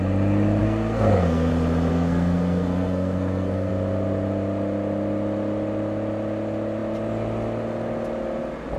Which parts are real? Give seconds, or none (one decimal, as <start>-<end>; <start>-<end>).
0.0-0.6; 1.5-1.9; 3.7-8.8